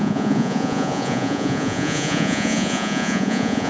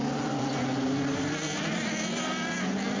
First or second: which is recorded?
second